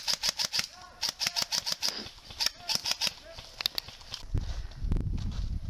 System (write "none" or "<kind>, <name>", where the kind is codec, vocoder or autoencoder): none